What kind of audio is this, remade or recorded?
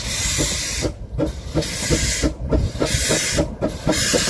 recorded